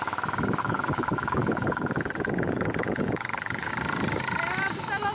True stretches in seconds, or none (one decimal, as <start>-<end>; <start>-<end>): 0.0-0.6; 3.7-5.1